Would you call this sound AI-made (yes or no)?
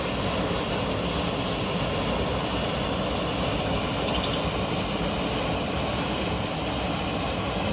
no